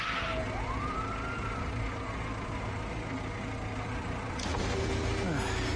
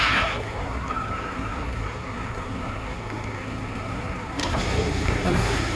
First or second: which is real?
first